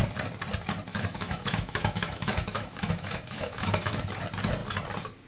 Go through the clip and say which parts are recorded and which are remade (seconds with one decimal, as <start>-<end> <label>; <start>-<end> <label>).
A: 0.0-0.9 recorded; 0.9-4.1 remade; 4.1-5.3 recorded